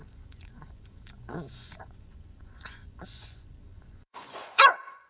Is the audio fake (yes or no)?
yes